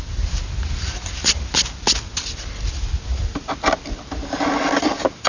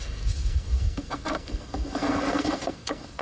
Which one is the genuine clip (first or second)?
first